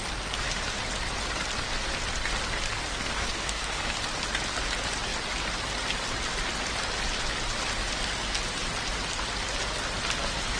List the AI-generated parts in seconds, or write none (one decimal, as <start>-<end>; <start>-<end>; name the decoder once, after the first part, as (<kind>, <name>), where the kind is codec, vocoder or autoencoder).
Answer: 2.9-4.0 (codec, SNAC)